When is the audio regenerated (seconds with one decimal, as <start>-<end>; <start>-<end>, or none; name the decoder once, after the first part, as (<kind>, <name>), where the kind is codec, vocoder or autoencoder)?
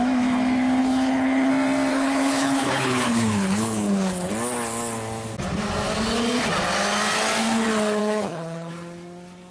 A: 0.8-1.5 (codec, HILCodec); 1.9-4.3; 8.0-8.7